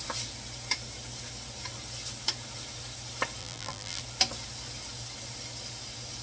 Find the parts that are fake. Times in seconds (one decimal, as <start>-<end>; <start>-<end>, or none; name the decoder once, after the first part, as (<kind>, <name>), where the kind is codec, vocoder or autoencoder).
3.4-4.0 (vocoder, BigVGAN v2)